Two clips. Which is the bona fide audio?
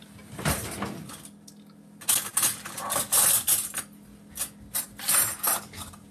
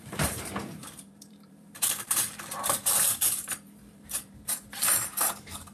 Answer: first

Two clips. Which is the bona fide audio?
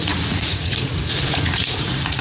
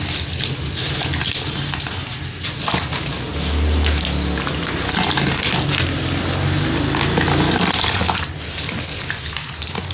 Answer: second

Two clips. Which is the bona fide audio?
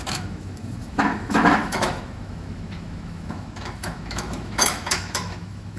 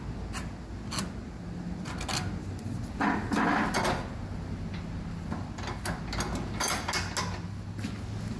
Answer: second